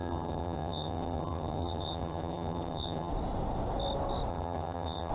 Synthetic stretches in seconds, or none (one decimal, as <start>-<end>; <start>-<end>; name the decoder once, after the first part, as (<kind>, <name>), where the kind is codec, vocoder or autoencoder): 0.0-3.1 (vocoder, HiFi-GAN); 4.3-5.1